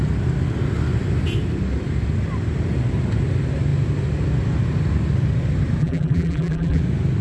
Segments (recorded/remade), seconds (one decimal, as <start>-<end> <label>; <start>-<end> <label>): 0.0-5.8 recorded; 5.8-6.8 remade; 6.8-7.2 recorded